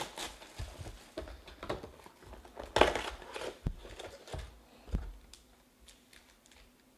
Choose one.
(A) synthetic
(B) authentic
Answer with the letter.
B